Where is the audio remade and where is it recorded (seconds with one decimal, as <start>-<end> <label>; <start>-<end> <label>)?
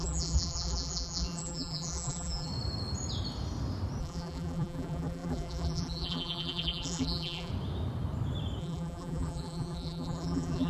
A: 0.0-2.5 remade; 2.5-4.0 recorded; 4.0-7.5 remade; 7.5-8.6 recorded; 8.6-10.7 remade